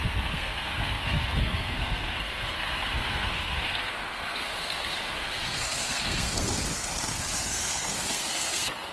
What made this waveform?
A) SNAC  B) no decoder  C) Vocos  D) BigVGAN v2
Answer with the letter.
A